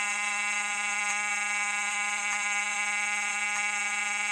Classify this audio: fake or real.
fake